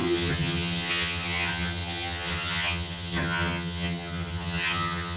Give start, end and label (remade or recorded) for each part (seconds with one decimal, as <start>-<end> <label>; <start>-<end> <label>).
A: 0.0-5.2 remade